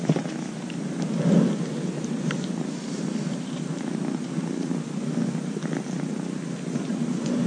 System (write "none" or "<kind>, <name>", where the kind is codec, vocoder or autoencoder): none